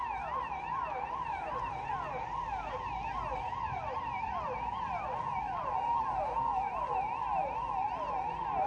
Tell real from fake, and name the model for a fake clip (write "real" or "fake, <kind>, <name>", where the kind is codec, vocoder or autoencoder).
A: real